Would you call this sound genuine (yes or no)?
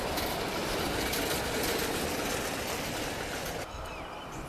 no